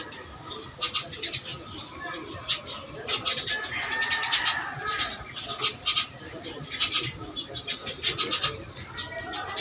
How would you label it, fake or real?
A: real